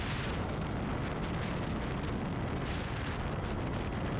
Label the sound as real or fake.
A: real